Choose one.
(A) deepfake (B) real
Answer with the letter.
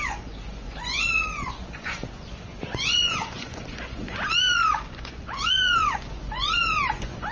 A